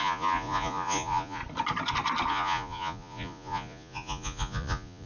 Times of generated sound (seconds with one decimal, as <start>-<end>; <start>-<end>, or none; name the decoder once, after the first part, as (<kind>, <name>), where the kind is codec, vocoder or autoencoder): 0.0-1.4 (vocoder, Vocos); 2.3-5.1